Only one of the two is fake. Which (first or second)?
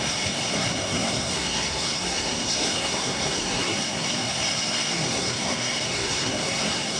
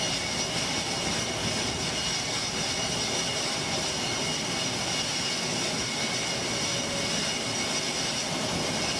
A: first